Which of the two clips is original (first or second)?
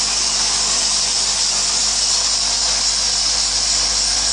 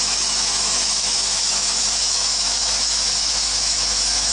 first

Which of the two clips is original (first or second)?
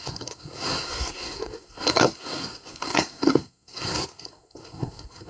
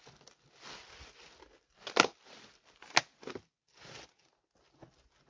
second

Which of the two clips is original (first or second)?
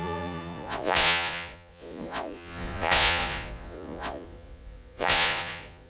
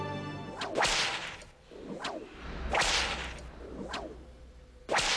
second